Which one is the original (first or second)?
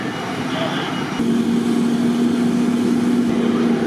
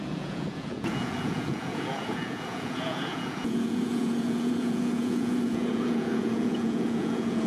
first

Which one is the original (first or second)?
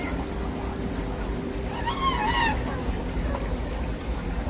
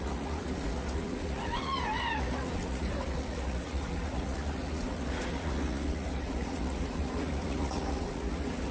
first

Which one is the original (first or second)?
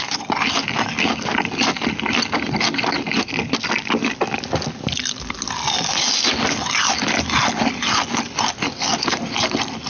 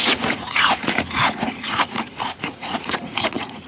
first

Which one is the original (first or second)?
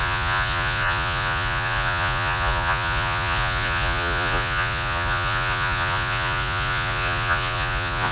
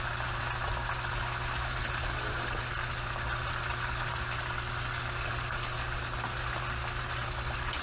second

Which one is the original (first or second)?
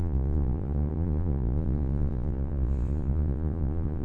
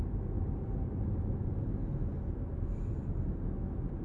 second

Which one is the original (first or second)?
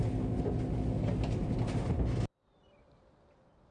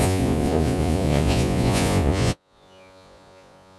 first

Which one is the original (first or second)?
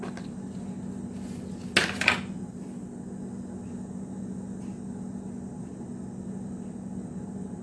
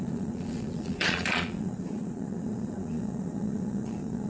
first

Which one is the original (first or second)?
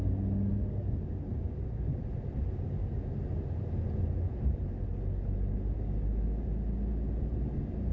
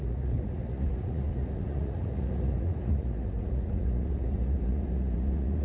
first